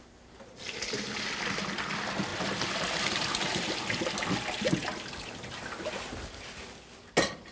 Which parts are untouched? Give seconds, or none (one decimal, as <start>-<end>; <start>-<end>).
0.0-2.3; 4.1-4.8; 5.5-7.5